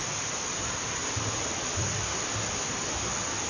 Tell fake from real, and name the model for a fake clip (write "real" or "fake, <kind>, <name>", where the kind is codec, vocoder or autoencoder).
real